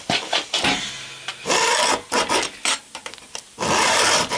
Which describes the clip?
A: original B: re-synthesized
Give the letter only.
A